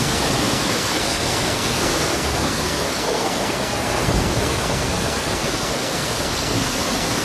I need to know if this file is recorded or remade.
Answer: remade